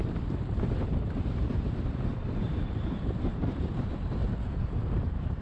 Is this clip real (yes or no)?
no